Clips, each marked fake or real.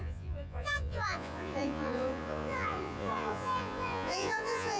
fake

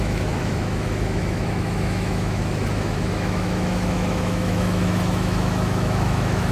fake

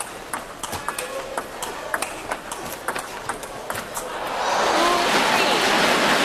real